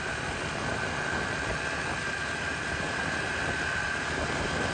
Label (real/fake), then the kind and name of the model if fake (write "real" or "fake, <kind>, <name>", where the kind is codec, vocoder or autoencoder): real